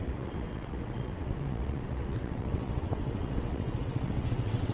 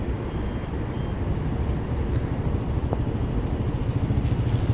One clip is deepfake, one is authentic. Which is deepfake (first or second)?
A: first